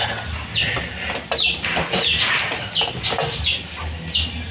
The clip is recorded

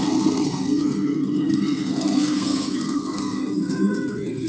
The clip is remade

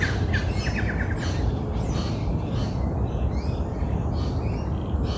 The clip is recorded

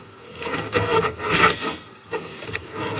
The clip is remade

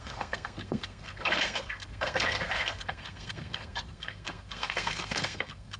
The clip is remade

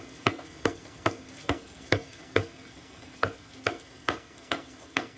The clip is remade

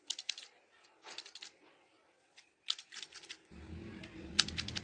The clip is recorded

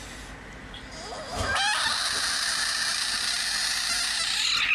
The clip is recorded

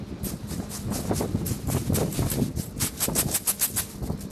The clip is recorded